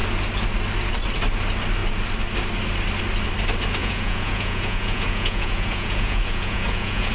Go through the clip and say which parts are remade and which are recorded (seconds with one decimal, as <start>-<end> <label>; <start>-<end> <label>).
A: 0.0-3.8 recorded; 3.8-7.1 remade